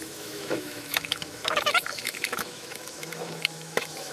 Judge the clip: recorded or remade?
remade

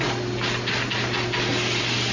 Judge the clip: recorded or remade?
recorded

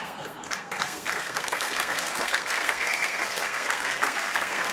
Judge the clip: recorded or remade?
remade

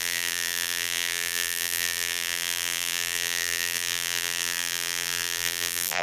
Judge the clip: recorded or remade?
remade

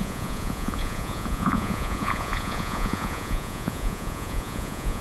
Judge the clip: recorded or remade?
remade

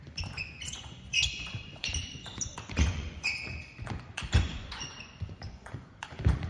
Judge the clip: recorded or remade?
remade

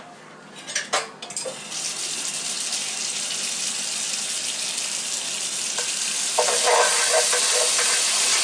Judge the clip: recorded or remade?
recorded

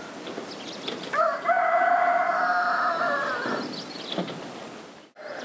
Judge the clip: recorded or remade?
recorded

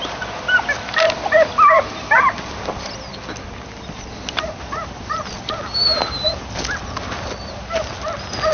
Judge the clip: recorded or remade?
recorded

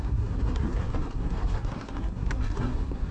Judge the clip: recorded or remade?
remade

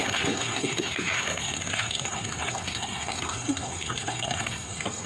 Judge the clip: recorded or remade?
remade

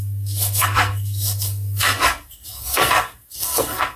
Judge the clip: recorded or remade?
remade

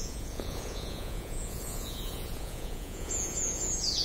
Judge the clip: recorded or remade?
remade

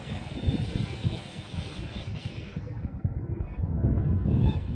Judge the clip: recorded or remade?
remade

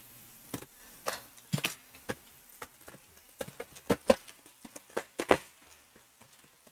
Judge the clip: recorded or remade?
recorded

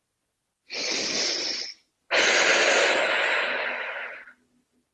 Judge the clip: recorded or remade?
recorded